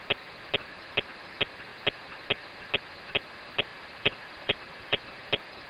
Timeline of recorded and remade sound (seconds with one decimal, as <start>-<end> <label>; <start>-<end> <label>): 0.0-3.7 recorded; 3.7-5.0 remade; 5.0-5.7 recorded